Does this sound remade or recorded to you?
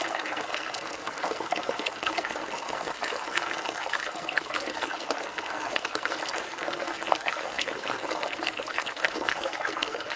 remade